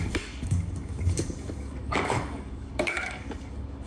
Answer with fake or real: fake